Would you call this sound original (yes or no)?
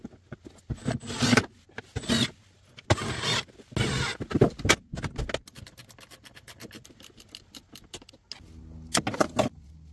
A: yes